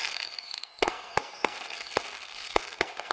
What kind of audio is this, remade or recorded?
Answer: remade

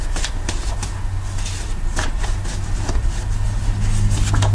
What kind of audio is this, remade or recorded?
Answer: recorded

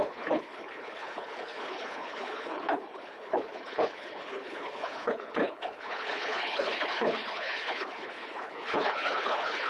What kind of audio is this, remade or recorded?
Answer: remade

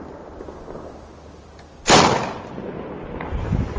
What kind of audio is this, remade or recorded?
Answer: recorded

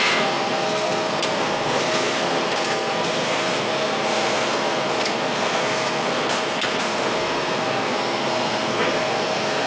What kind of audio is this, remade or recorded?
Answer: remade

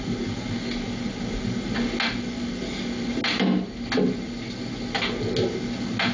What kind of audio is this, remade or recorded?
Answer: recorded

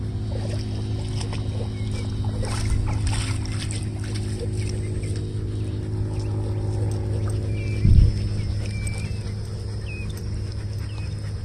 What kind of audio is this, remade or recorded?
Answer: recorded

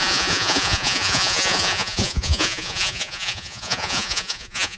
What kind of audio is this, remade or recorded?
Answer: remade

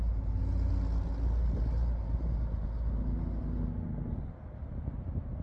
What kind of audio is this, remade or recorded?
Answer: recorded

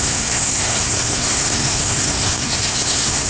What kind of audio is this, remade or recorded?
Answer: remade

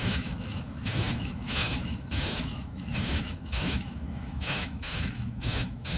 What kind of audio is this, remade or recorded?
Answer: remade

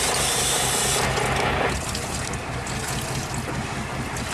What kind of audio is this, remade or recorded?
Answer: recorded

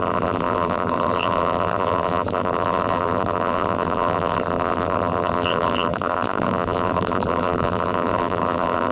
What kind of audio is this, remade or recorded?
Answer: remade